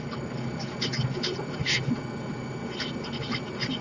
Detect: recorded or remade recorded